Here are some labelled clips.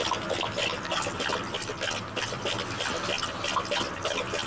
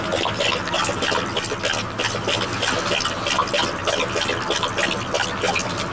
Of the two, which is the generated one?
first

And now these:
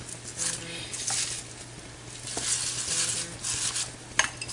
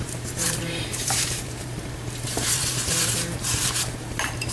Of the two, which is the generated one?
second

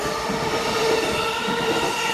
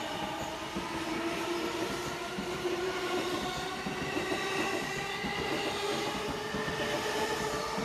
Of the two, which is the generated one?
first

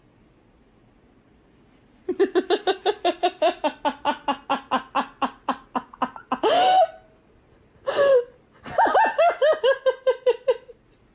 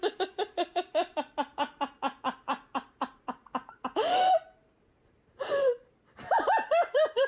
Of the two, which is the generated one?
second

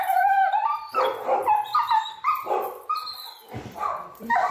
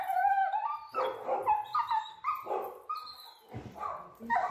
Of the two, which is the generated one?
first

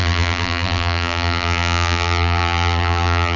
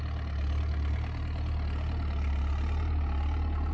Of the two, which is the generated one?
first